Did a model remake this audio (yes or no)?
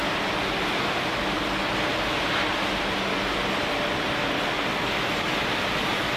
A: no